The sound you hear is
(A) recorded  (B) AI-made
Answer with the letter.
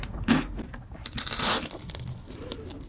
A